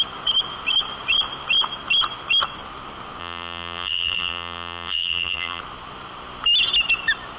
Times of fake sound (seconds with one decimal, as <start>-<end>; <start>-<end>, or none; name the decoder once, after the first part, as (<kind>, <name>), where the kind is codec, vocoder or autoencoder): 3.2-5.6 (vocoder, BigVGAN v2)